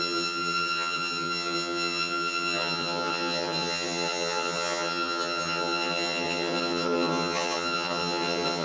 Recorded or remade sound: remade